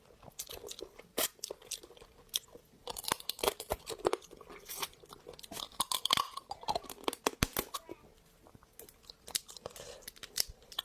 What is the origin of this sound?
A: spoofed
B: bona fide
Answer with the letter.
B